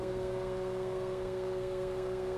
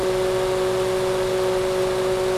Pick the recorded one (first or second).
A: second